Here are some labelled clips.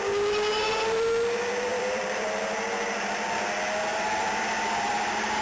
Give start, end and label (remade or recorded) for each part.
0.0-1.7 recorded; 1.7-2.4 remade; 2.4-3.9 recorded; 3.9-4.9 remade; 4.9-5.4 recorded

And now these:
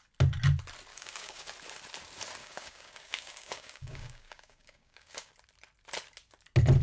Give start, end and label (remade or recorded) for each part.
0.0-0.9 recorded; 0.9-1.5 remade; 1.5-2.4 recorded; 2.4-5.3 remade; 5.3-6.8 recorded

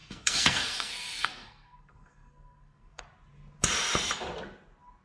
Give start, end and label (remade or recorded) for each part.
0.0-3.0 remade; 3.0-5.0 recorded

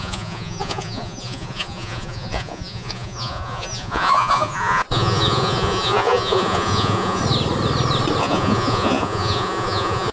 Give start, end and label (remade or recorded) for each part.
0.0-7.2 remade; 7.2-8.2 recorded; 8.2-10.1 remade

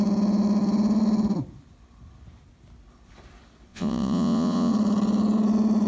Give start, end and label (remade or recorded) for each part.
0.0-3.7 recorded; 3.7-4.7 remade; 4.7-5.9 recorded

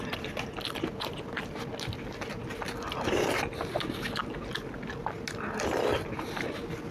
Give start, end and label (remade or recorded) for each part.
0.0-6.9 recorded

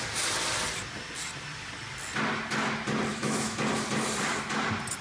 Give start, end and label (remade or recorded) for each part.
0.0-3.1 recorded; 3.1-3.6 remade; 3.6-5.0 recorded